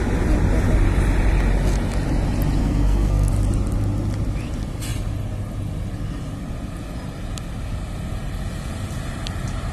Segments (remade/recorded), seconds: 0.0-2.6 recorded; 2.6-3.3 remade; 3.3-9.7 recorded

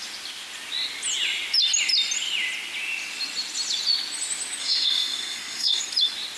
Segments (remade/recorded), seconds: 0.0-4.6 recorded; 4.6-5.8 remade; 5.8-6.4 recorded

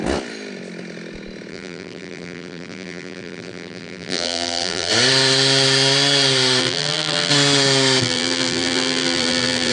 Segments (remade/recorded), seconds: 0.0-1.5 recorded; 1.5-4.9 remade; 4.9-6.6 recorded; 6.6-7.3 remade; 7.3-8.0 recorded; 8.0-9.7 remade

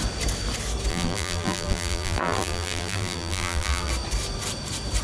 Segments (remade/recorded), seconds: 0.0-0.9 recorded; 0.9-3.9 remade; 3.9-5.0 recorded